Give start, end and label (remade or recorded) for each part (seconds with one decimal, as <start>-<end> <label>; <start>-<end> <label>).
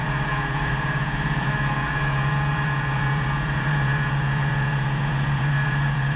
0.0-6.2 remade